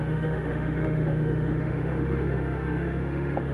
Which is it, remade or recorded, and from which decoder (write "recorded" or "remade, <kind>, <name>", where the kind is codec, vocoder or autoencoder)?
remade, autoencoder, DAC-VAE